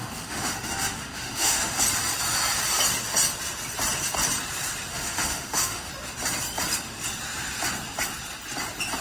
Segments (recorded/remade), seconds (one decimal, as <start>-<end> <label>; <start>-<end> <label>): 0.0-1.8 remade; 1.8-4.9 recorded; 4.9-5.9 remade; 5.9-9.0 recorded